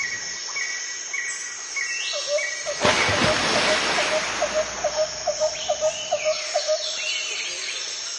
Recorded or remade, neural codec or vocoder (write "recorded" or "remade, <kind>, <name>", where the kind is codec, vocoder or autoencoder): recorded